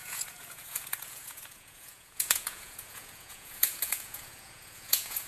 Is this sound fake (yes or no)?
yes